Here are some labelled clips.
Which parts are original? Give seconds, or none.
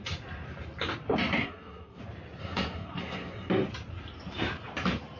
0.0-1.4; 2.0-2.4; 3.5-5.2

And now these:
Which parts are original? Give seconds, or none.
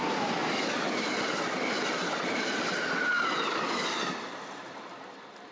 0.0-5.5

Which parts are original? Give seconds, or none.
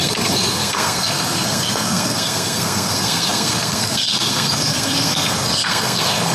none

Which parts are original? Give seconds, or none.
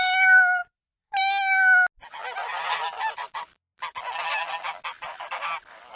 0.0-6.0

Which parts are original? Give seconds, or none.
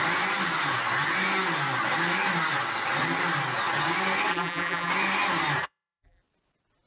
0.0-4.3; 4.9-5.6; 6.2-6.9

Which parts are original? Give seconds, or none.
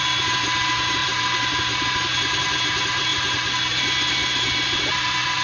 0.0-5.4